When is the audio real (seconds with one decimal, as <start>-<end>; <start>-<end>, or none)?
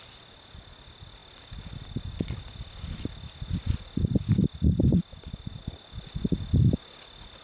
0.0-7.4